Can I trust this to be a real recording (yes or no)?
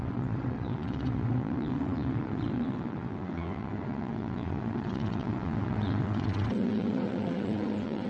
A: no